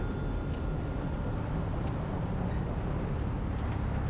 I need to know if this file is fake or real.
real